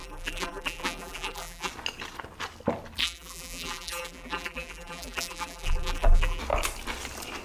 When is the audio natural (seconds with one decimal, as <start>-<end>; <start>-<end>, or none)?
1.7-3.0; 6.4-7.4